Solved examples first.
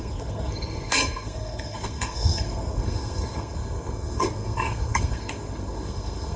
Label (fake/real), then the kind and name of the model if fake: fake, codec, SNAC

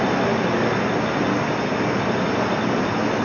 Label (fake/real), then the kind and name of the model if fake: real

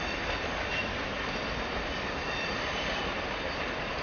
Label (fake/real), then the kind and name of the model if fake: real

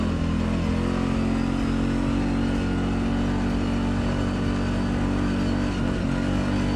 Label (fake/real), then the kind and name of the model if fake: real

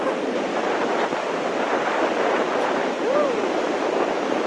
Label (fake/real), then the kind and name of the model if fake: fake, vocoder, BigVGAN v2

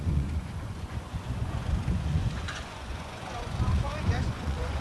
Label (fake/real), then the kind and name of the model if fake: fake, vocoder, Vocos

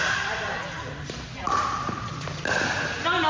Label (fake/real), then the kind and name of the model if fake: real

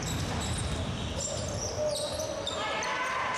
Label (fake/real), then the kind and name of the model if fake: real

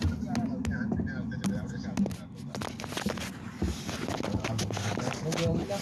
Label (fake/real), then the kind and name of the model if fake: real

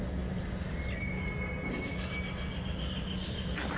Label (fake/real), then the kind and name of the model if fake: real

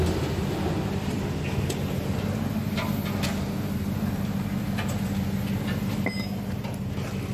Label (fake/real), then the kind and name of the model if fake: real